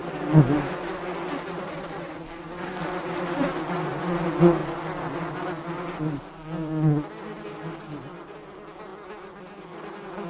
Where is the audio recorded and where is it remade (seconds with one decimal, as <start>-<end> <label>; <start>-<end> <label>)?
0.0-10.3 recorded